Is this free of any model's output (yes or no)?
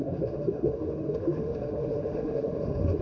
no